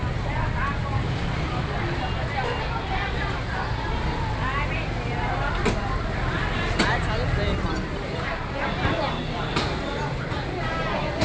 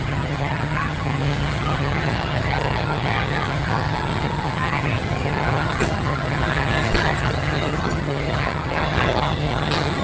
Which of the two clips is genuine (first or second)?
first